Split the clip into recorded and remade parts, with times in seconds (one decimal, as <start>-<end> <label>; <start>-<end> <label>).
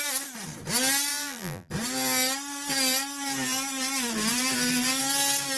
0.0-1.1 recorded; 1.1-1.7 remade; 1.7-5.6 recorded